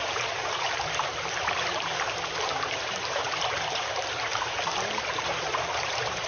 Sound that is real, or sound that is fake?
fake